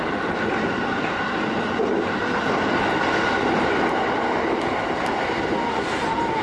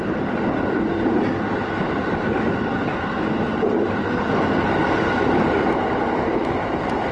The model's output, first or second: second